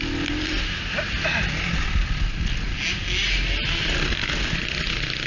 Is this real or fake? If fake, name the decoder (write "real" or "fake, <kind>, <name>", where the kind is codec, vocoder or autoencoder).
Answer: real